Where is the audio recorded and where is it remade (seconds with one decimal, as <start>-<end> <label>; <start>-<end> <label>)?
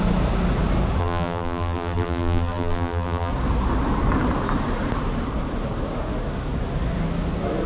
0.0-1.0 recorded; 1.0-3.3 remade; 3.3-7.7 recorded